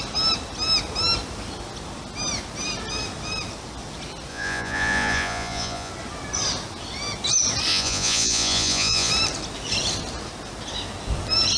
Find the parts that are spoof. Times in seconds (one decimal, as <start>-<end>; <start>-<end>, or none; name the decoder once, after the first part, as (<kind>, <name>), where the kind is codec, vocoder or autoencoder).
4.3-5.9 (vocoder, Vocos); 7.7-9.1